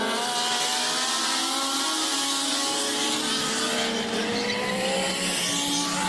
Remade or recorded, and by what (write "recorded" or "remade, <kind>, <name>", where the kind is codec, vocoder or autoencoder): recorded